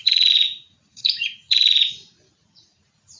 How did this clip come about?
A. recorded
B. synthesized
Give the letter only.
B